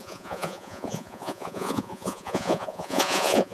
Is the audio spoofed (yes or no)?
yes